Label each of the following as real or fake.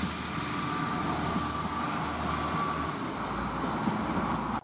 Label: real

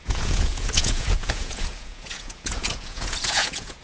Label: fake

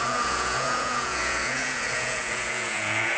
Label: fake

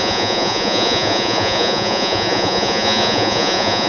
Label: fake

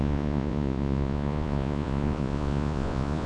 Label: fake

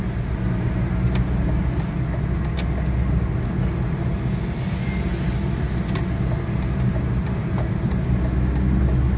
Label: real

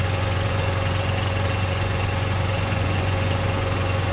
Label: fake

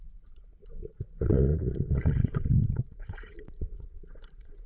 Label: fake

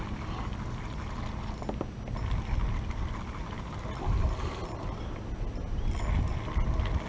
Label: real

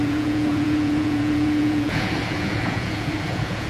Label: fake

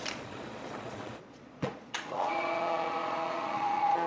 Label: fake